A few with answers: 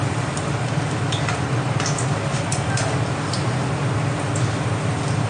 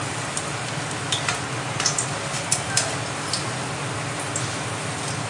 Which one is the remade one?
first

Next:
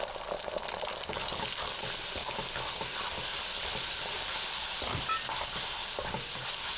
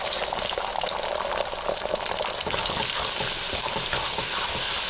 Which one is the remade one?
second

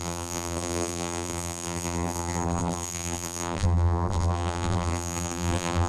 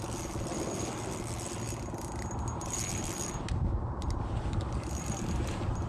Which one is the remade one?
first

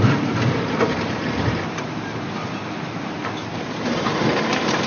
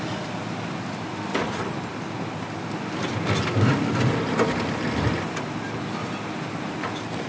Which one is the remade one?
first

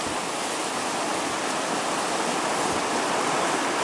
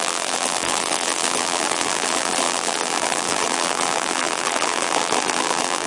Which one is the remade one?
second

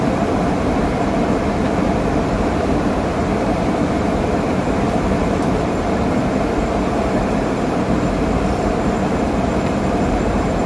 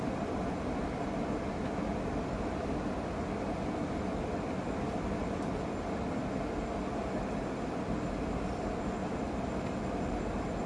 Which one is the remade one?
first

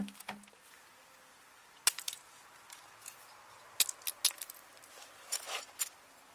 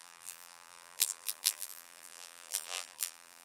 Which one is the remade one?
second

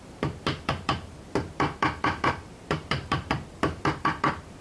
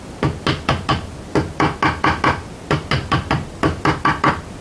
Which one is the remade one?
first